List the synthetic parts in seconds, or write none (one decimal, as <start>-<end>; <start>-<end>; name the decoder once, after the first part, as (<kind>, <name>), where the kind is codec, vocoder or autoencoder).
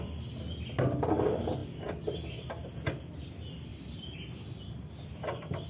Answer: none